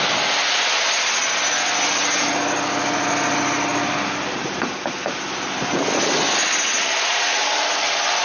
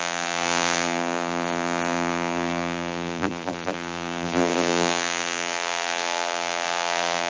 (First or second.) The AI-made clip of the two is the second